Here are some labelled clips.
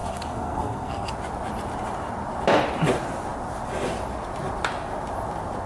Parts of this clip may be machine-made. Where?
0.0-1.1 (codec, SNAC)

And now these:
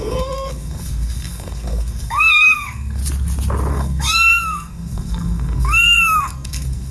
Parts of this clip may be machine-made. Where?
0.0-3.0 (codec, SNAC); 3.7-6.9

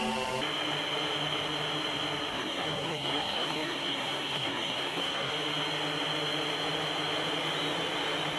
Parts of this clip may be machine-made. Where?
2.3-5.3 (codec, SNAC)

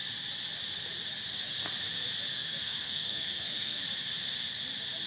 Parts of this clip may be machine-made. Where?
2.3-3.8 (codec, SNAC)

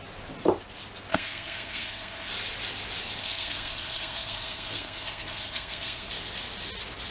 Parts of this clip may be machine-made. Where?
1.1-2.3 (codec, SNAC); 3.2-6.1